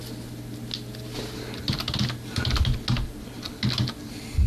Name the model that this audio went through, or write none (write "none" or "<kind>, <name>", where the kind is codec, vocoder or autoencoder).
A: none